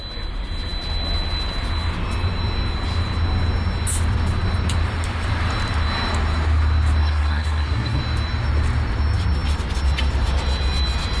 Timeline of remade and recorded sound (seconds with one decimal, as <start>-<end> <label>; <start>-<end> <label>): 0.0-7.0 recorded; 7.0-8.0 remade; 8.0-11.2 recorded